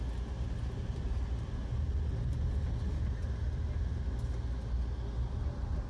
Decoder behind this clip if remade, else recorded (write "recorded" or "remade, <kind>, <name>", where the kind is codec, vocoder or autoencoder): recorded